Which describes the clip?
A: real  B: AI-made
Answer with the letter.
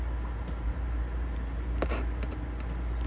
A